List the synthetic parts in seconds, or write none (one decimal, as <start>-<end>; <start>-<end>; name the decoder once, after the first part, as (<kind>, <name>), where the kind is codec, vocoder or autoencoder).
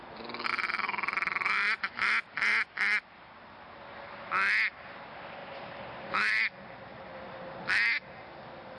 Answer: 0.5-1.8 (vocoder, BigVGAN v2); 5.4-7.5